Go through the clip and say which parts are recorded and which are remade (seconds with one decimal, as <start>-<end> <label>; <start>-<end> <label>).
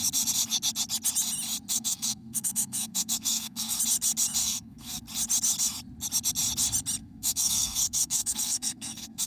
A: 0.0-1.7 recorded; 1.7-3.8 remade; 3.8-4.4 recorded; 4.4-5.0 remade; 5.0-7.0 recorded; 7.0-9.3 remade